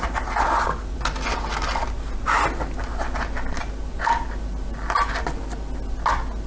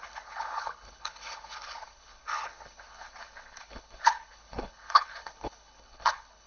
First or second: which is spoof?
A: second